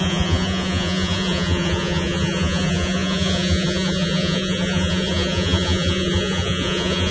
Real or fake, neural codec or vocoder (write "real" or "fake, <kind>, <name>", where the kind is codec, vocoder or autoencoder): fake, vocoder, Vocos